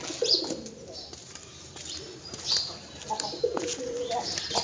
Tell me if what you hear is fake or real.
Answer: real